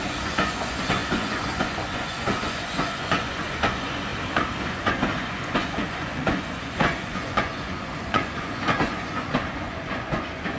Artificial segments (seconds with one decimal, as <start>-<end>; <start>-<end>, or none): 0.0-4.1; 4.6-10.6